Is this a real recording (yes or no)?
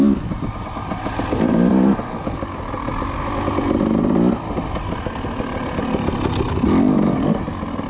yes